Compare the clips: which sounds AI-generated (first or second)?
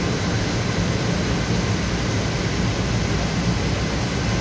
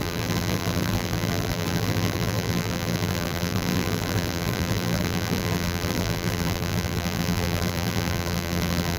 second